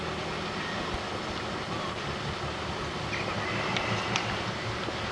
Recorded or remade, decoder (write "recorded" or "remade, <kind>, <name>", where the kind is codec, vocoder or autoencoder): recorded